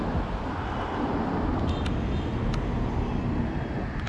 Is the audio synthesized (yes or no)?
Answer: no